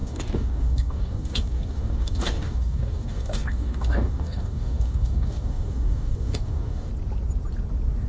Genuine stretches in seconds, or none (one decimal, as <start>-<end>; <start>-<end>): 6.9-8.1